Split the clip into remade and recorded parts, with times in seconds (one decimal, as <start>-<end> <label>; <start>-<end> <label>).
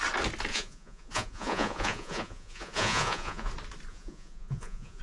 0.0-0.5 recorded; 0.5-3.5 remade; 3.5-3.9 recorded; 3.9-5.0 remade